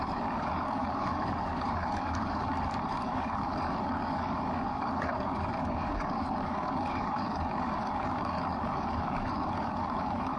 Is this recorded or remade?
remade